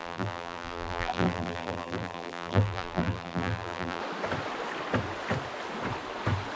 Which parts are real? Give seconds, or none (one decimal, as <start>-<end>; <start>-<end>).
4.0-6.6